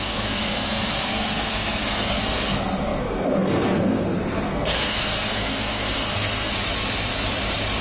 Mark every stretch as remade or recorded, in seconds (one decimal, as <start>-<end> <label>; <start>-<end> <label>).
0.0-6.5 remade; 6.5-7.8 recorded